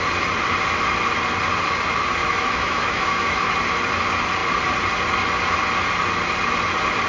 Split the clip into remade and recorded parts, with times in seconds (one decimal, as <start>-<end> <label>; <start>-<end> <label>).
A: 0.0-2.2 recorded; 2.2-3.5 remade; 3.5-7.1 recorded